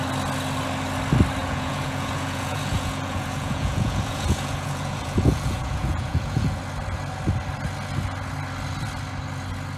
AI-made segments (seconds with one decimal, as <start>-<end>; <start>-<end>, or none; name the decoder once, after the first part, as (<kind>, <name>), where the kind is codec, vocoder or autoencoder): 1.4-6.6 (vocoder, Vocos)